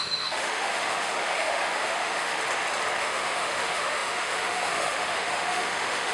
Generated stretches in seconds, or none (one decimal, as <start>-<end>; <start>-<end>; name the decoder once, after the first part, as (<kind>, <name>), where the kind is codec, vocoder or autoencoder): 0.0-2.4 (autoencoder, DAC-VAE); 3.0-6.1